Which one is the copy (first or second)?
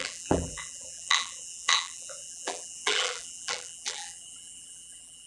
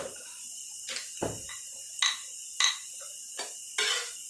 first